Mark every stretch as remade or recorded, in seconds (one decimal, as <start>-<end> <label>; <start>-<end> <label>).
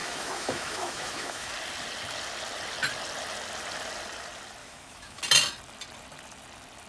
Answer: 0.0-1.5 remade; 1.5-4.6 recorded; 4.6-5.2 remade; 5.2-6.9 recorded